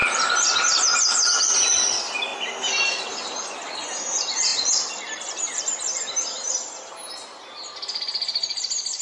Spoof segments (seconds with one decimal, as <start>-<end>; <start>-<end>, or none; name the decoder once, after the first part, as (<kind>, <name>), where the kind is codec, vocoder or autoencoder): none